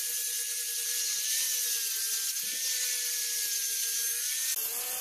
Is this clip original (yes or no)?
yes